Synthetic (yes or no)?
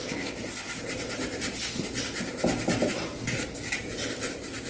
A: no